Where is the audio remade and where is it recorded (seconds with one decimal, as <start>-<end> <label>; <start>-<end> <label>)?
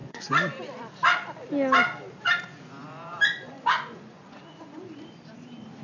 0.0-0.6 remade; 0.6-2.5 recorded; 2.5-5.1 remade; 5.1-5.8 recorded